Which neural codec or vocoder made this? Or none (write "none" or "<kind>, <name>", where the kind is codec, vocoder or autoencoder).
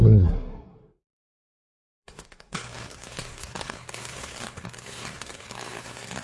codec, SNAC